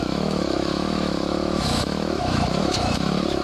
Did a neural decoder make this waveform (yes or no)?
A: yes